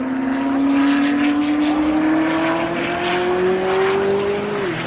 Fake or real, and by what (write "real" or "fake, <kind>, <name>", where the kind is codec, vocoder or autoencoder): real